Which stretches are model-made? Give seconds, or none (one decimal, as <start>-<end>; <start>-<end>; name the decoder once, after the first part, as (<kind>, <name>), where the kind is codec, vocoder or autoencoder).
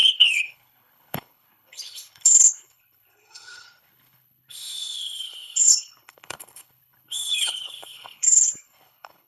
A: 0.0-9.3 (codec, HILCodec)